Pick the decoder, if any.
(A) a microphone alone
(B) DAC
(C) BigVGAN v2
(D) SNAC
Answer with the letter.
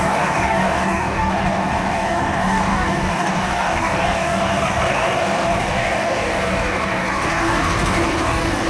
B